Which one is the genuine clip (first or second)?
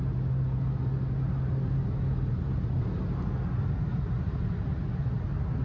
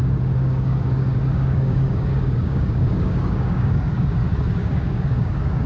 first